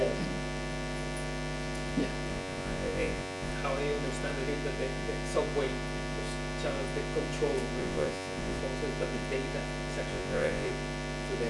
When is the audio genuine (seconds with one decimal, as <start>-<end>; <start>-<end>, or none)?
0.0-2.3; 3.5-7.8; 8.6-10.1; 10.7-11.5